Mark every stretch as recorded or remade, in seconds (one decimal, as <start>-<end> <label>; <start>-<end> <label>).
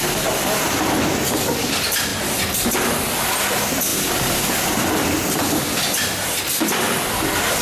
0.0-7.6 recorded